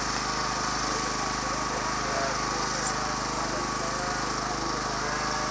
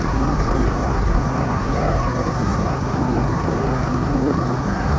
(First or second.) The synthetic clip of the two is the second